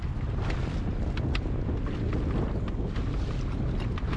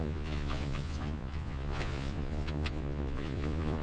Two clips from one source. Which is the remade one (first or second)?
second